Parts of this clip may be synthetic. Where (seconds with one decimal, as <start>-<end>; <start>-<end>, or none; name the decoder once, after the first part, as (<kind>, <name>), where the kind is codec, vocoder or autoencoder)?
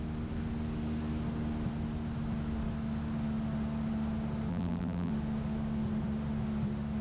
4.5-5.1 (vocoder, BigVGAN v2)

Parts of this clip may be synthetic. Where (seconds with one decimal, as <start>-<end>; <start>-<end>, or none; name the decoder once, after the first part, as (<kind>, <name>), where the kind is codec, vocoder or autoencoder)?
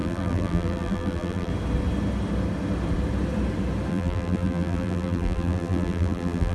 0.0-1.5 (vocoder, BigVGAN v2); 3.9-6.5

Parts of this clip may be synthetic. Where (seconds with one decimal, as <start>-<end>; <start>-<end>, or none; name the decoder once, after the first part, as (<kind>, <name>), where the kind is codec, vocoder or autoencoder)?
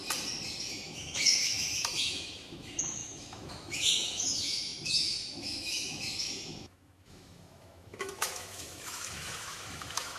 0.6-10.2 (autoencoder, DAC-VAE)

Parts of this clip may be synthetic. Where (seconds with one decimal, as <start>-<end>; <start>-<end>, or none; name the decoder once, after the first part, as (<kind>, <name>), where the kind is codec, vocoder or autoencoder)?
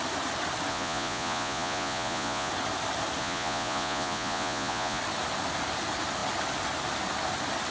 0.7-2.5 (vocoder, Vocos); 3.2-5.0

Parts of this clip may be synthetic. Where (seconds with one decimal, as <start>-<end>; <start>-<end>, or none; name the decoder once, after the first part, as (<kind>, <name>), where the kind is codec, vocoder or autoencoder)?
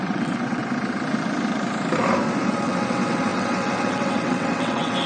0.0-0.6 (vocoder, WaveNeXt); 2.5-5.1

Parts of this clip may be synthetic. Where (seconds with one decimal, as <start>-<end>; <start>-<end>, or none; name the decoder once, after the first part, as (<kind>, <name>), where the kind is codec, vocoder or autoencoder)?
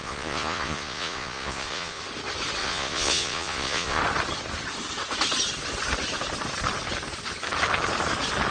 0.0-2.0 (vocoder, Vocos); 2.6-4.0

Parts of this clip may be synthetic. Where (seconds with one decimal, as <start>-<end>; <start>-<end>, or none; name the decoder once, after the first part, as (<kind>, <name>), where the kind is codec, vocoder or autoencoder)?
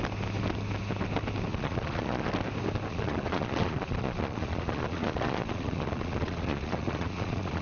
1.5-2.3 (vocoder, Vocos); 2.9-7.6